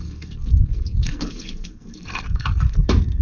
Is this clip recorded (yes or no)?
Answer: no